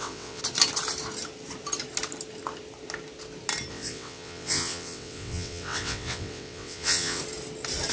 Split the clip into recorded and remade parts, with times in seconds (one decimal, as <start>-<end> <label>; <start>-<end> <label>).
0.0-0.4 remade; 0.4-3.7 recorded; 3.7-7.2 remade; 7.2-7.9 recorded